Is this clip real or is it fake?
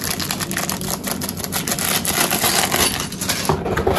real